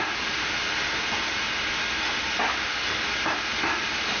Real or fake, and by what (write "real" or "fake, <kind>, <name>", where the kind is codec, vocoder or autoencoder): real